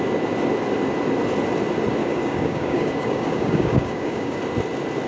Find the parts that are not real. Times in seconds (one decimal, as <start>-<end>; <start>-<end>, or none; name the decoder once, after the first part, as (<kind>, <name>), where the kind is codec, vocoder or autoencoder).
2.0-4.4 (codec, DAC)